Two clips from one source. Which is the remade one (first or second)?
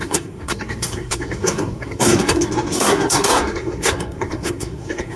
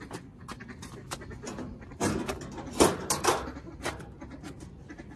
first